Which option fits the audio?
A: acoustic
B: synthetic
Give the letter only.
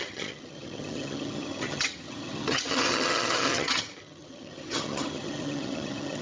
B